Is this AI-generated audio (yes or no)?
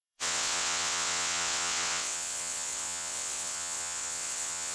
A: yes